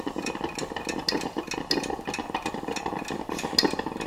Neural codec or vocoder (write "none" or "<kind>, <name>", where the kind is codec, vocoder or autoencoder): none